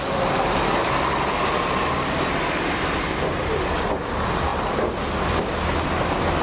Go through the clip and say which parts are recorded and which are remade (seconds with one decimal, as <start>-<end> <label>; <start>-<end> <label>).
0.0-6.4 recorded